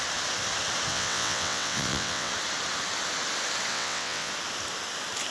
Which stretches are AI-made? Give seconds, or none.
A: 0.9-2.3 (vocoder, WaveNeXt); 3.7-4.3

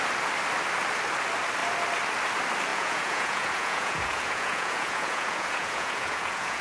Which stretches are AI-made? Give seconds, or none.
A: 2.7-6.6 (vocoder, Vocos)

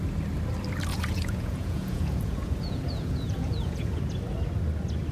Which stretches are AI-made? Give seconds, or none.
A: 0.9-4.0 (vocoder, Vocos)

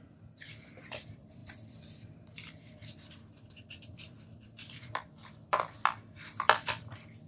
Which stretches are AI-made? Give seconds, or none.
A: 0.0-7.3 (vocoder, BigVGAN v2)

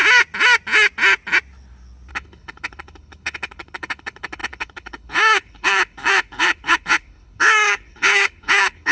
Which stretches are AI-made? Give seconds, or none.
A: 2.1-8.9 (codec, HILCodec)